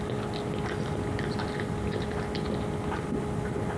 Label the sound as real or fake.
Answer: real